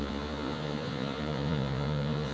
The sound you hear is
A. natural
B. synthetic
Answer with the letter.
B